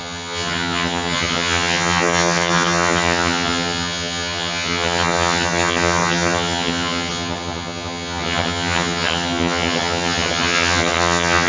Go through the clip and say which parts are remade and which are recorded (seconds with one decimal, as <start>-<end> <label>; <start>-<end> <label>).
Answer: 0.0-11.5 remade